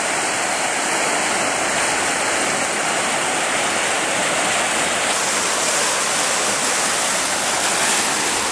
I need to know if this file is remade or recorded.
recorded